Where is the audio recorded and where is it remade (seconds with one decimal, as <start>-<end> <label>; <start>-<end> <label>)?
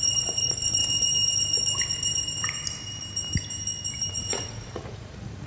0.0-0.8 remade; 0.8-4.1 recorded; 4.1-5.5 remade